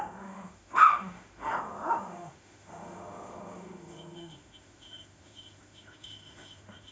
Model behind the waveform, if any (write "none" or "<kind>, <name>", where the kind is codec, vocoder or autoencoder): autoencoder, DAC-VAE